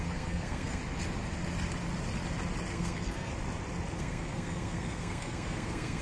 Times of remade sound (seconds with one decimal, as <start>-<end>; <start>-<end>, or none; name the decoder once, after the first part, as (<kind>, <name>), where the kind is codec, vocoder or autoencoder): 0.0-0.8 (codec, SNAC); 2.7-3.3; 4.0-6.0